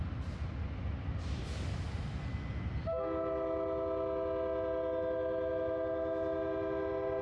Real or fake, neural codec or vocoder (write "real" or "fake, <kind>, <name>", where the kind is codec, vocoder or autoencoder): real